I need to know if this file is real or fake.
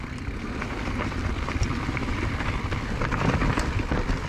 real